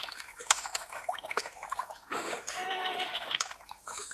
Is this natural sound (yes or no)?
no